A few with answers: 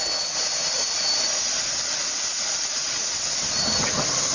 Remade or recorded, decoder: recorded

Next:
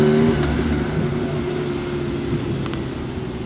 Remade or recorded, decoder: recorded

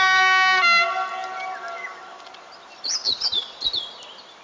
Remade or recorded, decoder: recorded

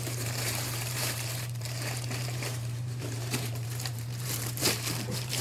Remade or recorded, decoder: remade, vocoder, BigVGAN v2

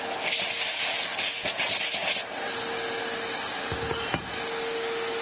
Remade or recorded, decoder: recorded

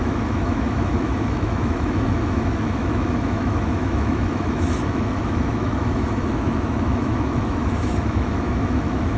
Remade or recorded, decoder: remade, autoencoder, DAC-VAE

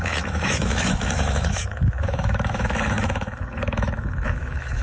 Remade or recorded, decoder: remade, autoencoder, DAC-VAE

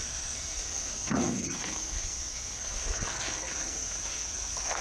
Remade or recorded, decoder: remade, codec, SNAC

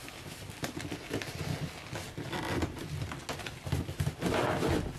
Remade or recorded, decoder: recorded